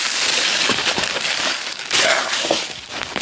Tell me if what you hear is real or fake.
fake